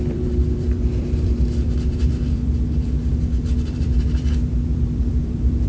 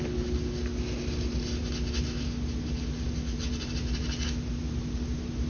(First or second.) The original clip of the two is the second